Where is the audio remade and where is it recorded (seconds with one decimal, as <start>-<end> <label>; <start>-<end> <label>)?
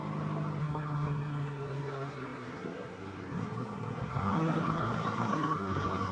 0.0-0.6 recorded; 0.6-6.1 remade